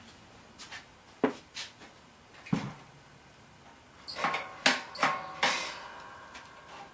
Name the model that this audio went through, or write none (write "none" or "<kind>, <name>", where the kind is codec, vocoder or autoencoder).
none